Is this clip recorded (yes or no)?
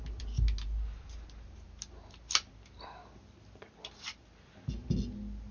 yes